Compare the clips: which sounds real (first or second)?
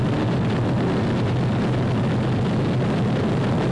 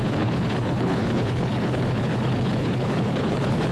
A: first